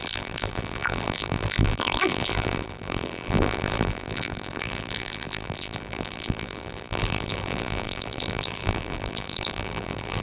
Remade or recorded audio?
remade